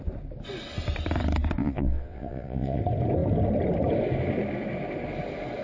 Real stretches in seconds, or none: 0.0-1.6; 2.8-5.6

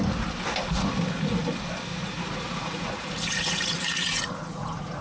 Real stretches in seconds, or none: 0.0-1.9

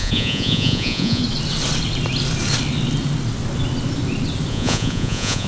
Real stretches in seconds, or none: 1.2-4.5

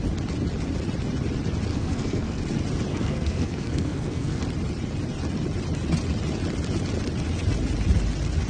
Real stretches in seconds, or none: 0.0-1.7; 2.4-2.9; 4.4-8.5

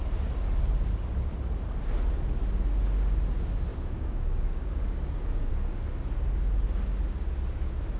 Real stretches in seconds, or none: 0.0-3.7; 5.5-8.0

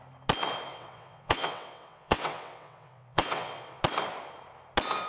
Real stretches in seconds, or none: 0.0-0.7; 3.8-5.1